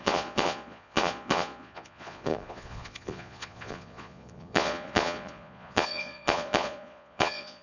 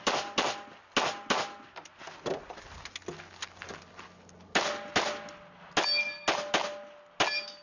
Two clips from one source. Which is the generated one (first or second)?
first